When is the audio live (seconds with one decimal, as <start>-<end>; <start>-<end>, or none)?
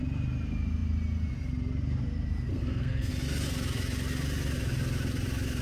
0.0-2.5; 3.1-5.6